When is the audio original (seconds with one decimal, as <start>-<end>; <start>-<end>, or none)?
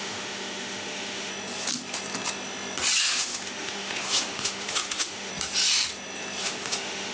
1.3-3.0; 5.3-6.4